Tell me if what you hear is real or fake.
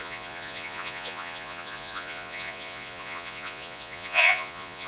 fake